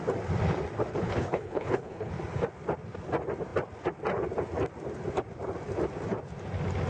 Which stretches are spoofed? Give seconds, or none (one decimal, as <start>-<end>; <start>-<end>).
0.9-2.1